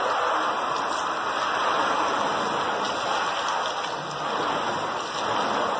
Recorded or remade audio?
recorded